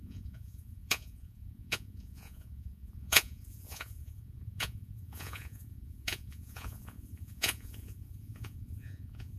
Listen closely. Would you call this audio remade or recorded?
remade